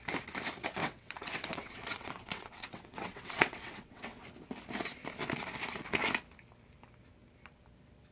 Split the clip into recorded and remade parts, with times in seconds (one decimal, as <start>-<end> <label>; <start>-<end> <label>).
0.0-0.8 recorded; 0.8-4.2 remade; 4.2-8.1 recorded